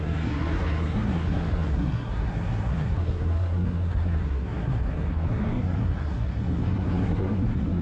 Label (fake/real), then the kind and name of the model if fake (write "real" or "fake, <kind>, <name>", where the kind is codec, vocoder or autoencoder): fake, codec, SNAC